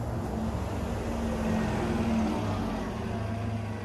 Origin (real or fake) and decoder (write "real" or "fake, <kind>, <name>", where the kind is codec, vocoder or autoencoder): real